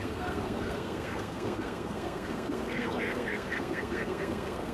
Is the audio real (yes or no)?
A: no